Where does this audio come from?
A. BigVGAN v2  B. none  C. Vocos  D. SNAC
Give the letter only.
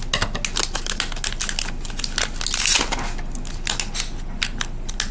B